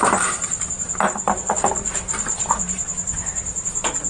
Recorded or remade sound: recorded